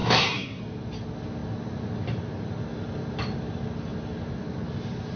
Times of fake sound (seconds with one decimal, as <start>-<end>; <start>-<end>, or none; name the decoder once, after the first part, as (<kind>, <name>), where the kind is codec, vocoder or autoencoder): 0.0-0.6 (codec, SNAC)